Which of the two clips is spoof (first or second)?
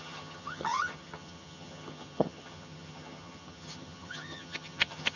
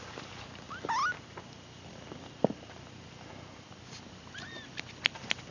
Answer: first